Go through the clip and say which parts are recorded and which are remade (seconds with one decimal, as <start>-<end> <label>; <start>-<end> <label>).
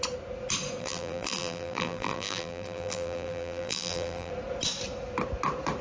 0.0-0.8 recorded; 0.8-4.3 remade; 4.3-5.8 recorded